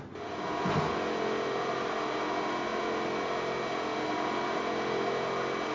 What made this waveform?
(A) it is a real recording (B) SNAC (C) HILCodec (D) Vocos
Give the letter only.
A